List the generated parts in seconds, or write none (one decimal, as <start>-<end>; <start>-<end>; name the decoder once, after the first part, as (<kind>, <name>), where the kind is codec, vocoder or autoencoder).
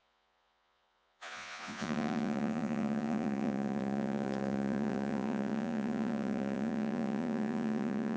0.0-8.2 (vocoder, Vocos)